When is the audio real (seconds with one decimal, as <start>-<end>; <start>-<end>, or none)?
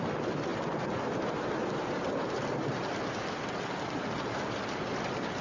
0.0-5.4